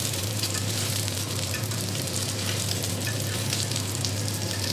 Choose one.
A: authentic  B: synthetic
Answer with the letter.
B